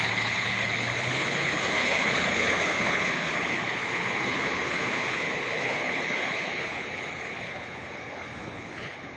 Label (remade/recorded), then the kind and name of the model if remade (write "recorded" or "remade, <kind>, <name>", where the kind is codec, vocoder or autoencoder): remade, codec, HILCodec